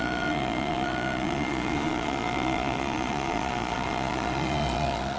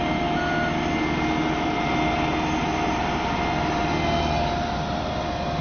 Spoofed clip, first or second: first